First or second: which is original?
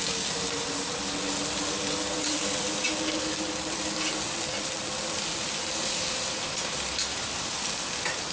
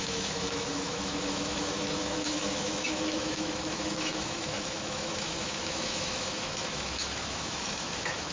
first